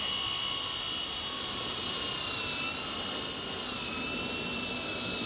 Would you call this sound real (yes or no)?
yes